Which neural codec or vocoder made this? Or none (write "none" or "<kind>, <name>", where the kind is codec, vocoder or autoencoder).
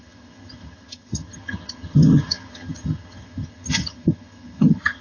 vocoder, HiFi-GAN